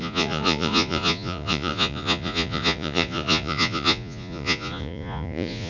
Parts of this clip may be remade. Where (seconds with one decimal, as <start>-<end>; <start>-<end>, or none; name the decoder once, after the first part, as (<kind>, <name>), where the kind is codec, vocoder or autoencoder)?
0.0-5.7 (vocoder, Vocos)